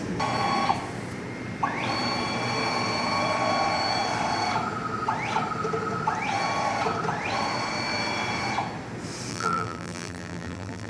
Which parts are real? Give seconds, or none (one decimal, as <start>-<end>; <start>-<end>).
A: 0.0-9.3